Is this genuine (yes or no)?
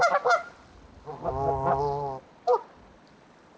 yes